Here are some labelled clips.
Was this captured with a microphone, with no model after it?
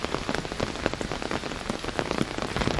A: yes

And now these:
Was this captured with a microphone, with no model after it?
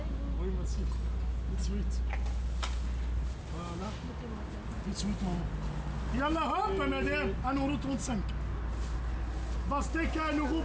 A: yes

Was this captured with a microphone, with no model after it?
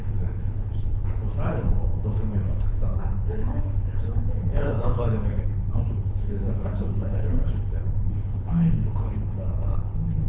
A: no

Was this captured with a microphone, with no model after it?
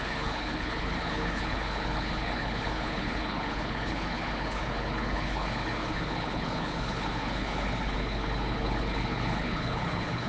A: no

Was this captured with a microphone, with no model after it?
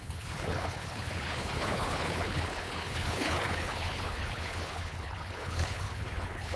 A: no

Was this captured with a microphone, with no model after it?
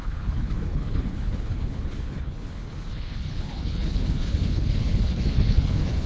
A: no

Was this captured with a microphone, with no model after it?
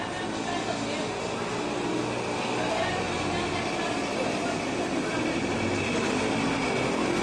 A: yes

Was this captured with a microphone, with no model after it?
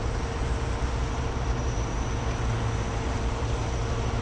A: yes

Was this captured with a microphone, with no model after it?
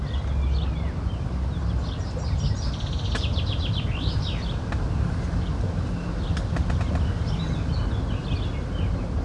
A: yes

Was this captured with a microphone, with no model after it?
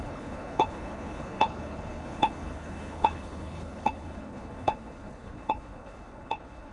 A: no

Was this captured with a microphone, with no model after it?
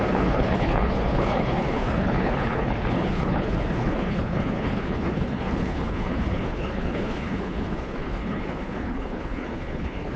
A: no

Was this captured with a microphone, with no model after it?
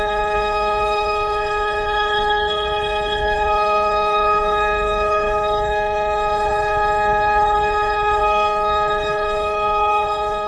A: no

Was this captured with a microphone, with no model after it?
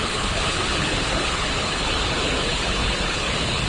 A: no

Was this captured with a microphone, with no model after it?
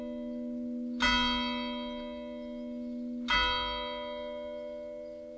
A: yes